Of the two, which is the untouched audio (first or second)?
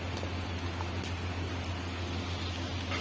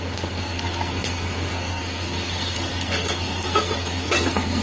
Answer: first